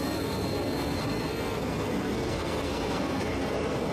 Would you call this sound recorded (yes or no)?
no